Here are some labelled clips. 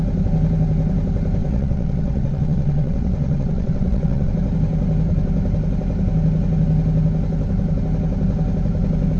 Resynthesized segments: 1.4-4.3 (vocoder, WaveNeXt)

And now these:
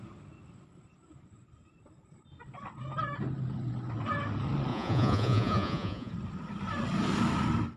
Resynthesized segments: 4.7-6.1 (vocoder, Vocos)

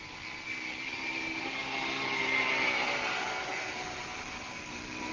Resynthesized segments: none

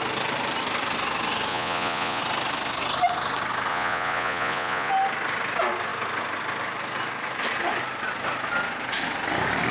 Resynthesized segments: 1.5-2.2 (vocoder, Vocos); 3.7-4.9

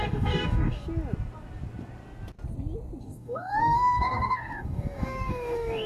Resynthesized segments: 0.0-0.8 (codec, DAC); 3.0-5.9

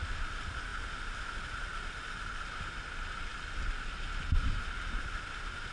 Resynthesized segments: none

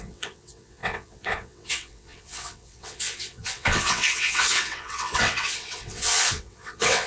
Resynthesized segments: 0.0-7.1 (vocoder, WaveNeXt)